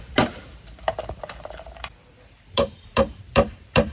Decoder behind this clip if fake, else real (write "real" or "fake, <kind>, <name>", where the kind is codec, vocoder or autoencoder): fake, vocoder, BigVGAN v2